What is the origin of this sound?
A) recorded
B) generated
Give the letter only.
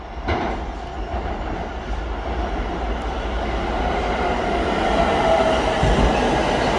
A